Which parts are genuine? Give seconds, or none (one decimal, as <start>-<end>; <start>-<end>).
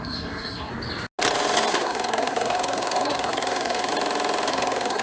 0.7-1.7; 3.9-4.5